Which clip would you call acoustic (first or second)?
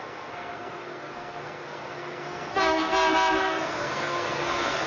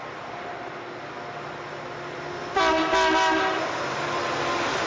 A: second